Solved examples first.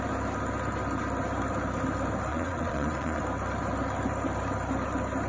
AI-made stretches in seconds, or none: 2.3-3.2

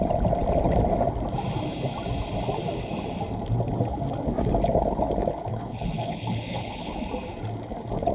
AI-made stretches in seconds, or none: 5.5-7.0

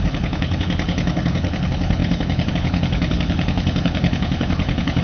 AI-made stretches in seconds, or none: 0.0-5.0

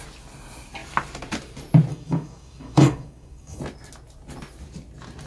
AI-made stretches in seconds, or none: 1.9-3.6

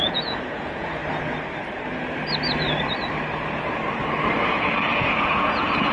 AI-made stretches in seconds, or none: 0.0-1.0; 4.5-5.9

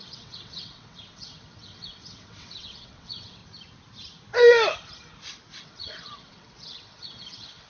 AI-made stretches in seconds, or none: 0.0-3.4; 5.6-7.7

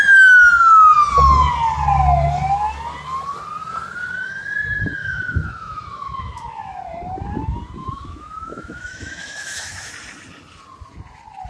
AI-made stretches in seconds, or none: 5.0-6.8; 7.8-9.9